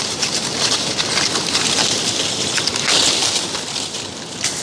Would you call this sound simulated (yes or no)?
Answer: no